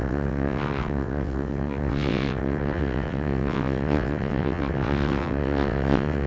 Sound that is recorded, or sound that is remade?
remade